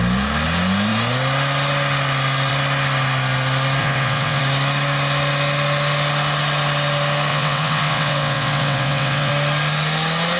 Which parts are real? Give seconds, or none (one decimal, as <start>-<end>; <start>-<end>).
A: 0.0-3.8; 4.4-7.3; 9.3-10.4